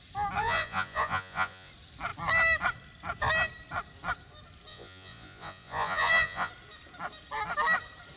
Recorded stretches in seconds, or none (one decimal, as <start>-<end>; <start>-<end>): 0.0-0.4; 1.7-4.7; 6.5-8.2